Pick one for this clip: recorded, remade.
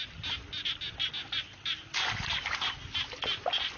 recorded